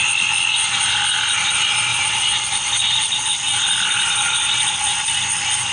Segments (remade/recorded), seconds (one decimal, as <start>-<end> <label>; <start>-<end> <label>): 0.0-5.7 recorded